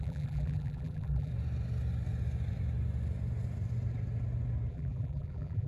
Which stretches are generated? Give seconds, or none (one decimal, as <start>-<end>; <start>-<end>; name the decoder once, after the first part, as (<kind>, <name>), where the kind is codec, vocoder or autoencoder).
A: 0.0-1.3 (vocoder, BigVGAN v2); 4.7-5.7